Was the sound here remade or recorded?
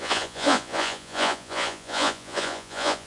remade